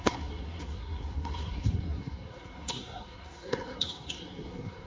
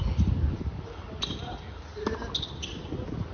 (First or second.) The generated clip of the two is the first